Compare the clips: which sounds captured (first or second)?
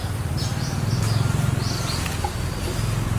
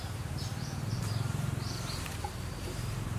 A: first